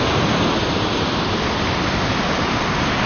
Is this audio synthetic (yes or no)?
no